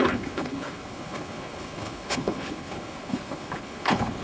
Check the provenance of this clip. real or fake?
fake